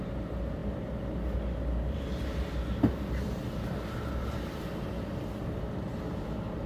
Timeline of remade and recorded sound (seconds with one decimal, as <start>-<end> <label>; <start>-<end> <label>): 0.0-6.7 recorded